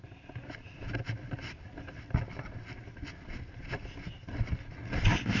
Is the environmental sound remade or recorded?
recorded